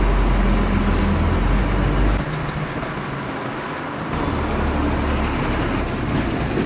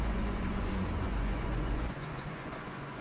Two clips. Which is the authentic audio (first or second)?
first